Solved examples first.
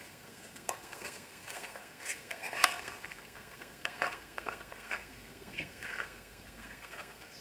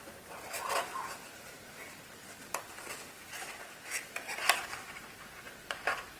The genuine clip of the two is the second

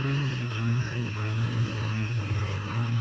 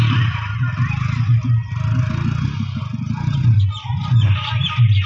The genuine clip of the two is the second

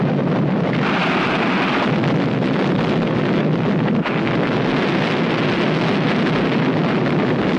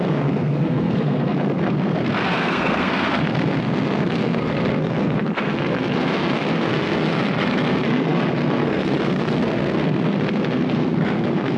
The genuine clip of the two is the first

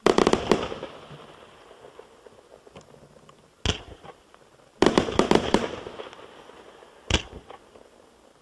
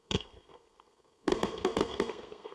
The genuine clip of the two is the first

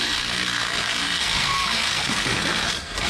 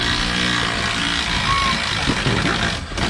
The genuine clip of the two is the second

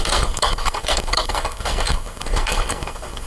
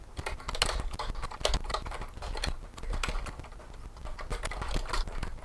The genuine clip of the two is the second